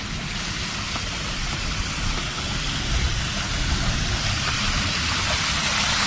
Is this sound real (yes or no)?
yes